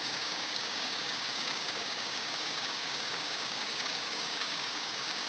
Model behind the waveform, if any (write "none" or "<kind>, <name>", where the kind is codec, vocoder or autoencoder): codec, DAC